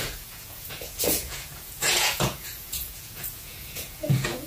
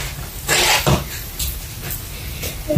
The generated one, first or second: first